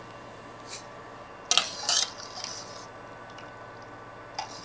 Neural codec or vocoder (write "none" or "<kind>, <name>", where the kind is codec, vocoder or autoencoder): none